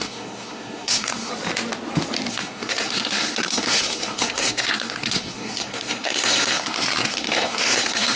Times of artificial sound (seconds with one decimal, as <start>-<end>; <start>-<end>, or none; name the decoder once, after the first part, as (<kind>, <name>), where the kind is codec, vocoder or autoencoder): 0.0-1.3 (codec, SNAC); 2.3-8.2